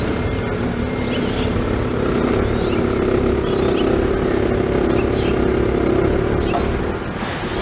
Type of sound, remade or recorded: recorded